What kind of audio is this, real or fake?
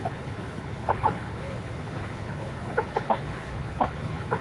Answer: fake